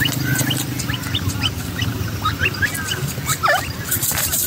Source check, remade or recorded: recorded